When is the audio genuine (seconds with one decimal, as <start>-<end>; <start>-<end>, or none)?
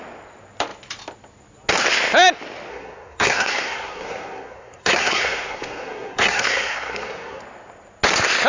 0.0-2.7; 7.4-8.5